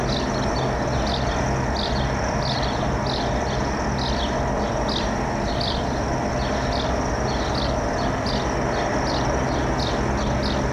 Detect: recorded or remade recorded